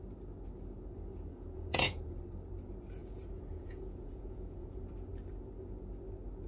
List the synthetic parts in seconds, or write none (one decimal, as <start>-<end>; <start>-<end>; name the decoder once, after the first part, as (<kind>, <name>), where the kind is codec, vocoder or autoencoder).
1.3-2.2 (vocoder, Vocos); 3.0-4.9